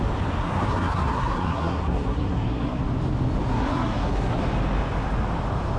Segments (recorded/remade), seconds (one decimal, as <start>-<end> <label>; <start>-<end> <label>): 0.0-0.4 recorded; 0.4-2.8 remade; 2.8-3.5 recorded; 3.5-4.4 remade; 4.4-5.8 recorded